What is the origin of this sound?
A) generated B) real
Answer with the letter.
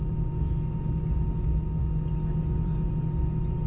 B